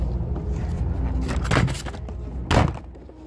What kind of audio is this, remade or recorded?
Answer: recorded